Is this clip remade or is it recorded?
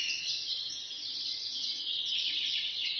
remade